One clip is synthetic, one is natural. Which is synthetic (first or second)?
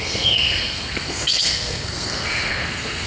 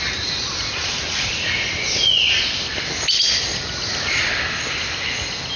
first